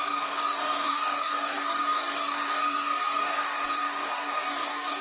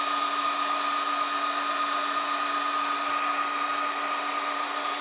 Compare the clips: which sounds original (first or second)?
second